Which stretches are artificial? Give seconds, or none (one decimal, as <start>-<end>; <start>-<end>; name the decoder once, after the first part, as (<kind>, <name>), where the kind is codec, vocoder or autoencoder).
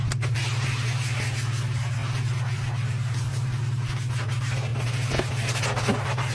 none